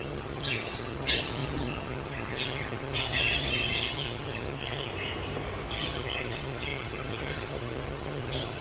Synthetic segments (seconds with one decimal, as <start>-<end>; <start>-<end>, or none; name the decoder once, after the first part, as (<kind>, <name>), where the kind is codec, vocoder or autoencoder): 0.0-4.9 (vocoder, HiFi-GAN); 5.7-8.6